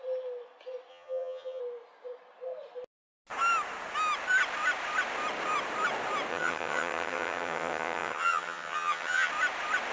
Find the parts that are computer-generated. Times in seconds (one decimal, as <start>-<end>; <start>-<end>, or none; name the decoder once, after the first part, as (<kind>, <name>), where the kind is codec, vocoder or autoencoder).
0.9-1.6 (vocoder, HiFi-GAN); 6.3-9.3